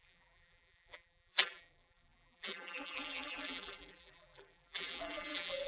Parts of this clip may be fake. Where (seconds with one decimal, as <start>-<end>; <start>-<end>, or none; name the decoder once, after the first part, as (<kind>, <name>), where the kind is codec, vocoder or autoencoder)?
0.0-5.7 (vocoder, BigVGAN v2)